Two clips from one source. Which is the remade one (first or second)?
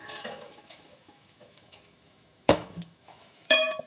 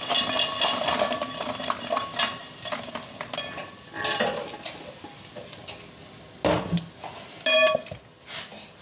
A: first